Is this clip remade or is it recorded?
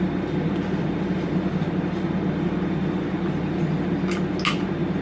recorded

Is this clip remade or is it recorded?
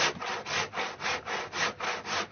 recorded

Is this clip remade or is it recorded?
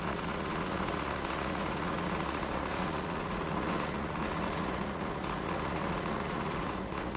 remade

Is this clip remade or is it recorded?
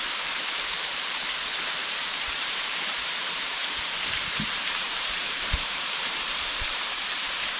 remade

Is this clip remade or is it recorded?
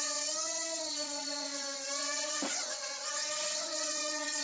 remade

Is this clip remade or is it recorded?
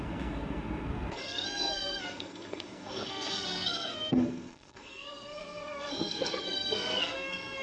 remade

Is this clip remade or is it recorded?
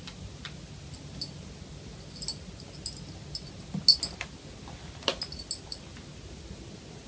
recorded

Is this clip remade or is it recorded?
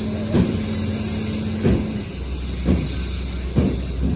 recorded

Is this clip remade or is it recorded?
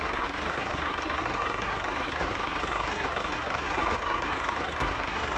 remade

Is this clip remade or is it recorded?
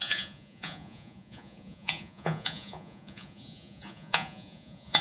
remade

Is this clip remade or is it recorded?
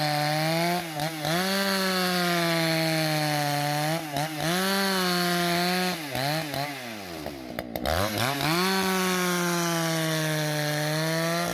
recorded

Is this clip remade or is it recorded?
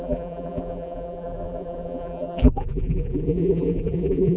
remade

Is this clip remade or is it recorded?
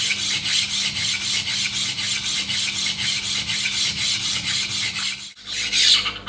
recorded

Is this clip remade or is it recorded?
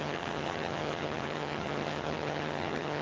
remade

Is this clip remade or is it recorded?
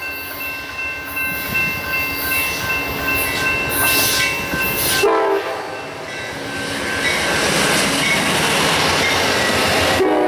recorded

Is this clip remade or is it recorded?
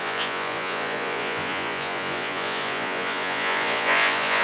remade